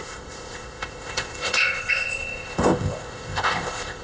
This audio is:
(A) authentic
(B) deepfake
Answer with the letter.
B